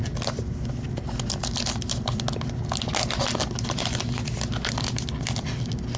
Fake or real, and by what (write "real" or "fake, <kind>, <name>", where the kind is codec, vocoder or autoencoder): real